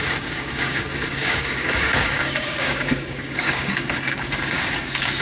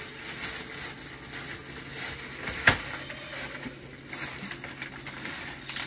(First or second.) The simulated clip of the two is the first